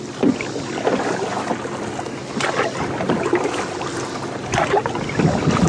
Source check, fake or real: fake